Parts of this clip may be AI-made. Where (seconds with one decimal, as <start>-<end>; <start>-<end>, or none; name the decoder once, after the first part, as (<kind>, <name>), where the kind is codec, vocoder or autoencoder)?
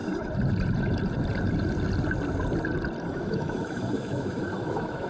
3.1-5.1 (autoencoder, DAC-VAE)